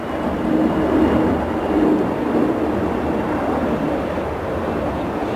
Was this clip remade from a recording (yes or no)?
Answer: no